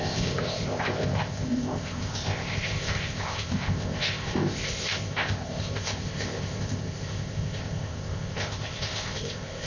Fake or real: fake